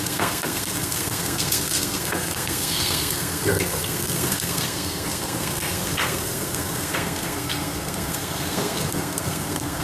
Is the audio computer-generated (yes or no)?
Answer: yes